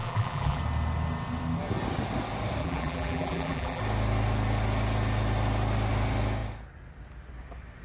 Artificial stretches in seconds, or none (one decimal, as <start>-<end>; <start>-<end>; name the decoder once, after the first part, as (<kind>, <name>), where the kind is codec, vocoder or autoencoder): 0.0-0.6 (vocoder, BigVGAN v2); 2.6-3.8